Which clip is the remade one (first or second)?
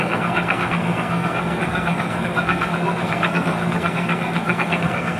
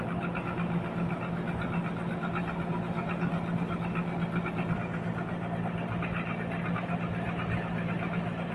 first